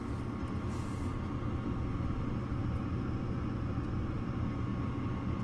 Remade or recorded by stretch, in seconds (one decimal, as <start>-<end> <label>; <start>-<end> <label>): 0.0-5.4 recorded

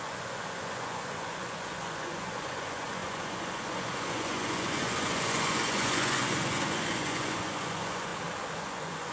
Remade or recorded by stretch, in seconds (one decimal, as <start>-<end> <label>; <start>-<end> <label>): 0.0-8.1 remade; 8.1-8.6 recorded; 8.6-9.1 remade

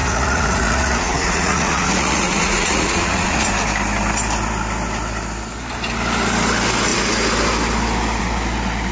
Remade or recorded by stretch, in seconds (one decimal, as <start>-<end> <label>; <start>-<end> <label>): 0.0-3.5 remade; 3.5-8.9 recorded

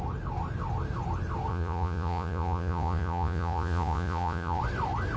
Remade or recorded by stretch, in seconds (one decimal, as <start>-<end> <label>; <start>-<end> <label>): 0.0-1.5 recorded; 1.5-4.6 remade; 4.6-5.2 recorded

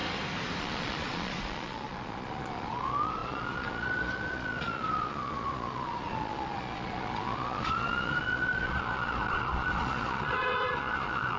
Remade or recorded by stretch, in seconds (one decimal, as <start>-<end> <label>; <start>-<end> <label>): 0.0-0.6 recorded; 0.6-11.4 remade

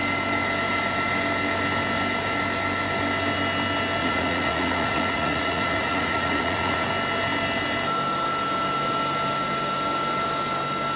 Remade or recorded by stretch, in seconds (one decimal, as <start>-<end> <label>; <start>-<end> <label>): 0.0-4.0 recorded; 4.0-6.9 remade; 6.9-11.0 recorded

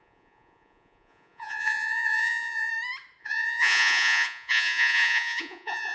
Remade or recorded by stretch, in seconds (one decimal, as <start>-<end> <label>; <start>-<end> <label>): 0.0-2.7 remade; 2.7-3.2 recorded; 3.2-5.9 remade

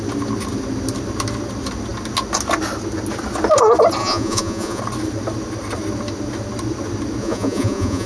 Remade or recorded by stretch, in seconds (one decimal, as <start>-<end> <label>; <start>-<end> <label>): 0.0-4.0 recorded; 4.0-4.8 remade; 4.8-7.2 recorded; 7.2-8.1 remade